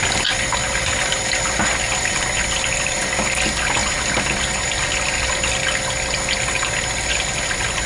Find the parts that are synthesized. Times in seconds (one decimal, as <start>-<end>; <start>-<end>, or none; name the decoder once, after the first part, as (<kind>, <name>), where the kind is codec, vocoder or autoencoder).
none